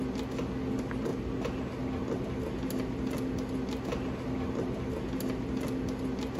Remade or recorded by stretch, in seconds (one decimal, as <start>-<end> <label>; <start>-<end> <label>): 0.0-6.4 recorded